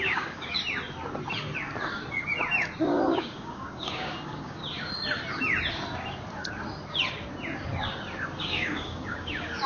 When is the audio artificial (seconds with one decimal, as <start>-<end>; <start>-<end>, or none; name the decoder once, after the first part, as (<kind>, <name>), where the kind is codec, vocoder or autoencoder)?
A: 0.0-0.6 (codec, DAC); 3.1-4.6; 8.4-9.7